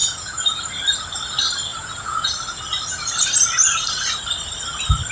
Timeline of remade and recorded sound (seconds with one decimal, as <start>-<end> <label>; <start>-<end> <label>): 0.0-0.6 remade; 0.6-1.7 recorded; 1.7-2.3 remade; 2.3-5.1 recorded